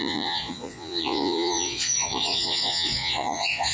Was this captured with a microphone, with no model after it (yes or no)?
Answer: no